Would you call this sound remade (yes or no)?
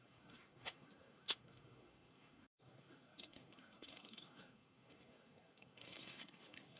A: yes